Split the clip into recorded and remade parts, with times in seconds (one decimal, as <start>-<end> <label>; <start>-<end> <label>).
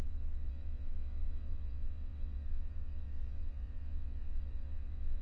0.0-5.2 remade